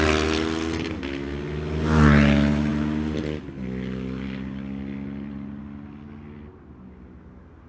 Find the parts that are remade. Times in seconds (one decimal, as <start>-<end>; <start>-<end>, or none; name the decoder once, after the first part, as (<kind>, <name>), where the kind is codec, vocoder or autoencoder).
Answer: none